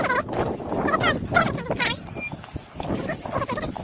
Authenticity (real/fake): real